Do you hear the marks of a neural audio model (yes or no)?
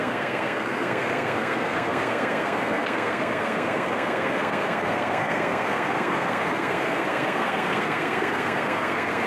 yes